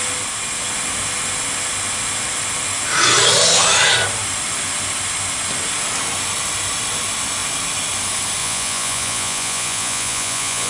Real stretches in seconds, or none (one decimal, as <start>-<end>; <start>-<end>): 0.0-8.4